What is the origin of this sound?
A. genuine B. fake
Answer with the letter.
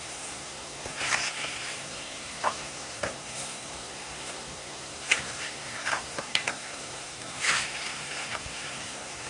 B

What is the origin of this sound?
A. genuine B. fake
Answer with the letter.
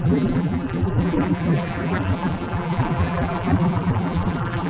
B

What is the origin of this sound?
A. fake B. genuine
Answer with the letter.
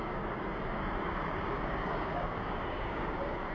A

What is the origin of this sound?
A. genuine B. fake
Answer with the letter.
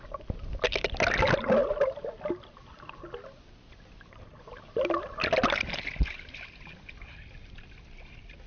A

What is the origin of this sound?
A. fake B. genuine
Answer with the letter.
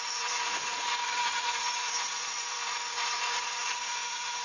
A